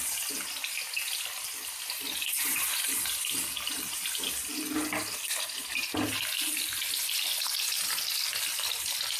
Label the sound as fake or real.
real